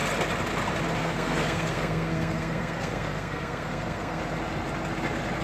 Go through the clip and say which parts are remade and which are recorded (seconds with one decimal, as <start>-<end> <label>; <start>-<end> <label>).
0.0-1.0 recorded; 1.0-4.2 remade; 4.2-5.4 recorded